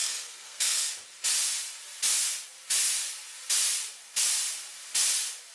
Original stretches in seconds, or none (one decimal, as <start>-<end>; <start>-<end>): 0.9-5.5